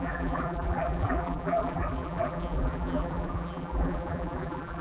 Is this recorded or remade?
remade